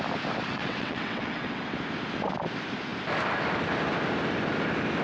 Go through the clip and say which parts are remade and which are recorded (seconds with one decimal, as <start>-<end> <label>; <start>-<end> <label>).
0.0-0.5 recorded; 0.5-1.7 remade; 1.7-5.0 recorded

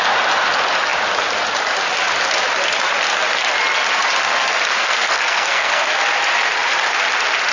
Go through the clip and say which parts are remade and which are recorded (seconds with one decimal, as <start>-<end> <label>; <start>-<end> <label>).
0.0-4.8 recorded; 4.8-5.9 remade; 5.9-7.5 recorded